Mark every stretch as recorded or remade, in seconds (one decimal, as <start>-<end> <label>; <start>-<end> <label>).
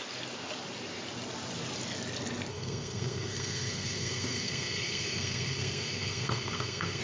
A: 0.0-2.5 recorded; 2.5-7.0 remade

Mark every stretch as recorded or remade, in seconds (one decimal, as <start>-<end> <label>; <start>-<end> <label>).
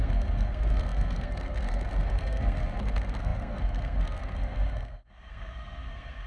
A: 0.0-6.3 remade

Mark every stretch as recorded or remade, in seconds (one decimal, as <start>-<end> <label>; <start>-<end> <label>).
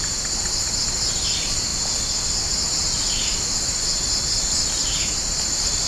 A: 0.0-5.9 recorded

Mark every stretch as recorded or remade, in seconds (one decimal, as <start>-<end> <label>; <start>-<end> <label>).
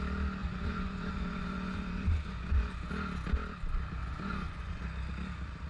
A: 0.0-0.4 recorded; 0.4-2.9 remade; 2.9-4.0 recorded; 4.0-4.8 remade; 4.8-5.7 recorded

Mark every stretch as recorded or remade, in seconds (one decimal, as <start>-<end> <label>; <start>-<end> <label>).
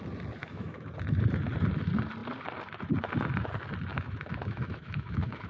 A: 0.0-0.4 recorded; 0.4-0.9 remade; 0.9-3.9 recorded; 3.9-5.5 remade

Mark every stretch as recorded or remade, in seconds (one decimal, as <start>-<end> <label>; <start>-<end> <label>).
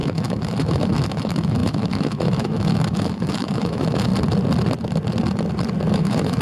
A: 0.0-4.1 remade; 4.1-5.9 recorded; 5.9-6.4 remade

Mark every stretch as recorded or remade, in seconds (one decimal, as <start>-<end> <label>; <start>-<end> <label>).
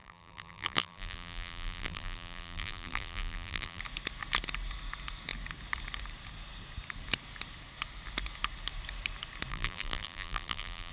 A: 0.0-3.8 remade; 3.8-9.5 recorded; 9.5-10.9 remade